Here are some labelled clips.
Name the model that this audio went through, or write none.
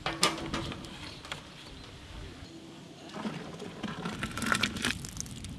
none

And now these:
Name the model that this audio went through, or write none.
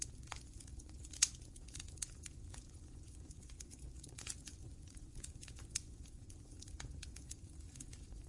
vocoder, Vocos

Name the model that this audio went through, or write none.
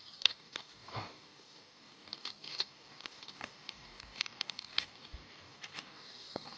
codec, DAC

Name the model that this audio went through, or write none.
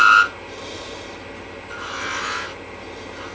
none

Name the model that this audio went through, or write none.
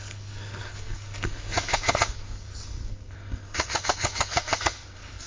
codec, SNAC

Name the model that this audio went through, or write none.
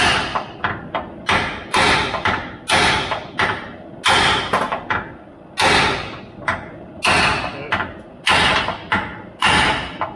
none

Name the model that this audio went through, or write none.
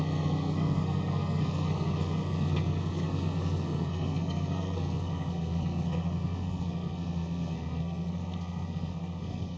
codec, SNAC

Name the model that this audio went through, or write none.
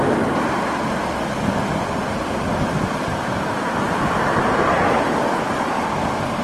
none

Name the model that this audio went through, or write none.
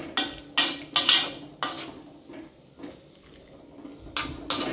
none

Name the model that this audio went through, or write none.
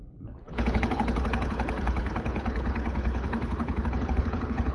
codec, HILCodec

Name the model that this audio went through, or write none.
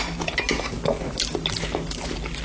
none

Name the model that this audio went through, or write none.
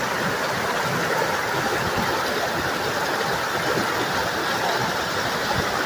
none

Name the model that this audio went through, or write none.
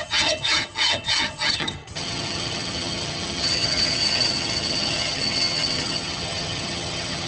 vocoder, HiFi-GAN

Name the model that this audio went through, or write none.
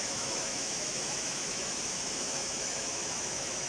autoencoder, DAC-VAE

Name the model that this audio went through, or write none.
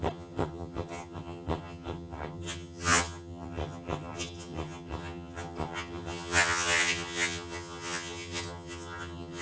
vocoder, HiFi-GAN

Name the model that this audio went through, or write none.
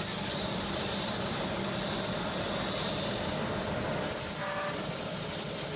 none